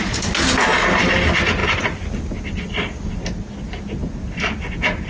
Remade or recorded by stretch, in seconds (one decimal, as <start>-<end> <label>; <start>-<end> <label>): 0.0-5.1 recorded